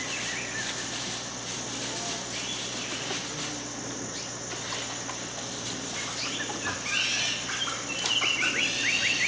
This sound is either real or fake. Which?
real